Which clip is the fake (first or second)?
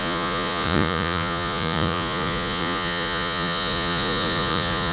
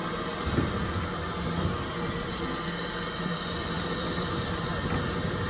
first